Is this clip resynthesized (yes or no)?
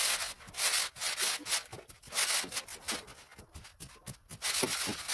no